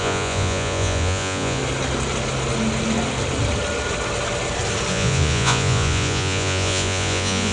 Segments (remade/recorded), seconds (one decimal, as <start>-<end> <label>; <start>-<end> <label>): 0.0-1.6 remade; 1.6-4.9 recorded; 4.9-7.5 remade